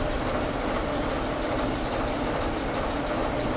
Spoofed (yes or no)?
no